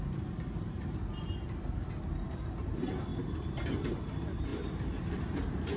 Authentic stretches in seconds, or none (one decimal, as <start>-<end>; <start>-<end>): none